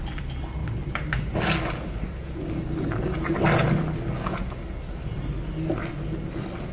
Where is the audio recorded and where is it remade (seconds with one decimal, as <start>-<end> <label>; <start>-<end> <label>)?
0.0-6.7 recorded